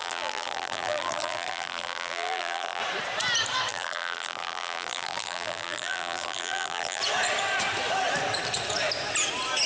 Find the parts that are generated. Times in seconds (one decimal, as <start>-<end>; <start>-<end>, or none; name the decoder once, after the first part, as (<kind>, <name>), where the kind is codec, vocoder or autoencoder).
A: 0.0-2.8 (vocoder, BigVGAN v2); 3.7-7.0